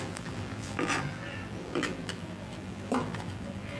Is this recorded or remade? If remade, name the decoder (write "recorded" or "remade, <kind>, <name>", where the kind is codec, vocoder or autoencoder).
remade, vocoder, BigVGAN v2